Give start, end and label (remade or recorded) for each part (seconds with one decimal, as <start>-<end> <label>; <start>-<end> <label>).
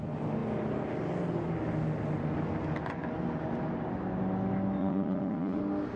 0.0-4.8 recorded; 4.8-5.6 remade; 5.6-6.0 recorded